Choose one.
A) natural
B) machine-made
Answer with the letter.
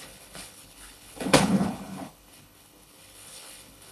B